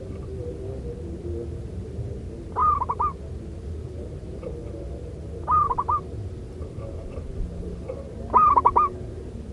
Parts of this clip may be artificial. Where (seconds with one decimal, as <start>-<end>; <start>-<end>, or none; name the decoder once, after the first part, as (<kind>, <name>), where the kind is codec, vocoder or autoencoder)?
0.4-0.9 (vocoder, BigVGAN v2); 2.6-6.1